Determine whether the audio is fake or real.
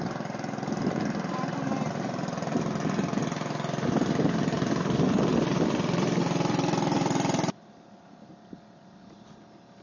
real